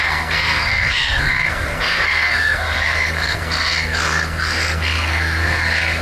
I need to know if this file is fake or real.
fake